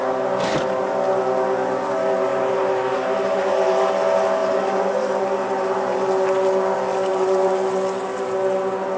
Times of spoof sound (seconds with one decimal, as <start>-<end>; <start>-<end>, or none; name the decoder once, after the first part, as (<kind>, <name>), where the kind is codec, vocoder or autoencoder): 2.3-3.9 (vocoder, BigVGAN v2); 4.4-6.1; 7.1-7.8